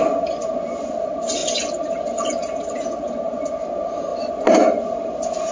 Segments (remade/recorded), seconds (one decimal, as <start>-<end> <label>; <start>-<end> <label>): 0.0-5.5 recorded